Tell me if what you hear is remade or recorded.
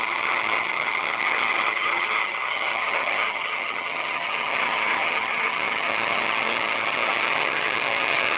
remade